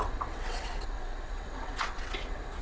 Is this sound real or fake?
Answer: fake